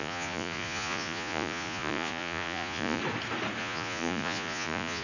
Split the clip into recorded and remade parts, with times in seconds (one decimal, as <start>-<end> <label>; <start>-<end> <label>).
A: 0.0-3.0 remade; 3.0-3.6 recorded; 3.6-5.0 remade